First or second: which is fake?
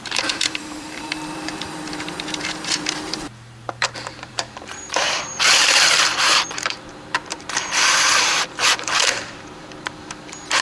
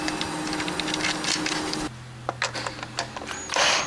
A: first